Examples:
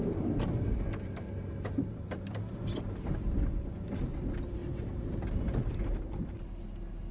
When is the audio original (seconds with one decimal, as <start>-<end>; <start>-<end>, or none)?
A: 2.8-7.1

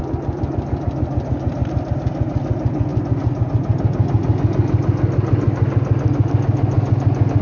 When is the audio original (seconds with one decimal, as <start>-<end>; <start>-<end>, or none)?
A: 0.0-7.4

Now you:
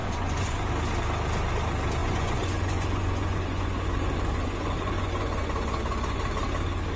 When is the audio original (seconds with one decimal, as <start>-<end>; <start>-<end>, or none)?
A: 0.7-2.0; 6.2-7.0

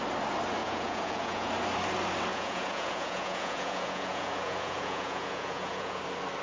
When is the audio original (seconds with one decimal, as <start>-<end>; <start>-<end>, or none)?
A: 0.0-0.6; 1.5-2.3; 6.0-6.4

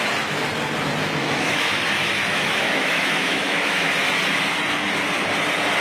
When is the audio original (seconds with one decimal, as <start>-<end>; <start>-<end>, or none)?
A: 0.0-1.2; 1.8-2.3; 3.9-5.8

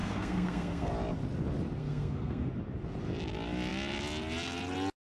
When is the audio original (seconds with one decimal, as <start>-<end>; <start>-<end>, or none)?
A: 0.9-1.8; 2.5-5.1